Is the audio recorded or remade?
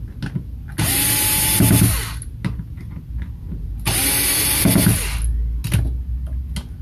recorded